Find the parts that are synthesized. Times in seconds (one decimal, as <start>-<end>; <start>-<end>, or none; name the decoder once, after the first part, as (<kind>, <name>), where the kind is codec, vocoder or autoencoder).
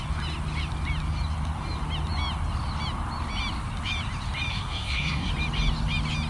4.5-5.3 (codec, SNAC)